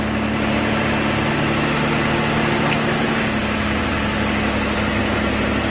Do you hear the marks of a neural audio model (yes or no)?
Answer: no